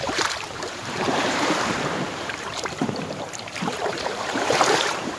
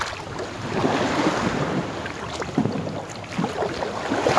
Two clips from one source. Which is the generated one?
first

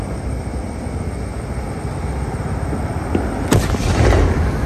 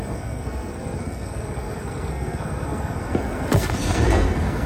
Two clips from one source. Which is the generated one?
second